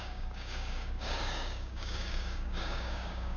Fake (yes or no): yes